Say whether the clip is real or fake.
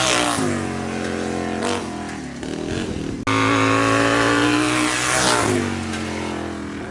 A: real